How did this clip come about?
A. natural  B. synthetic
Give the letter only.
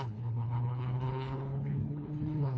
B